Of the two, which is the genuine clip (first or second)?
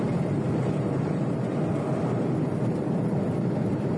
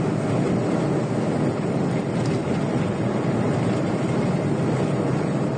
second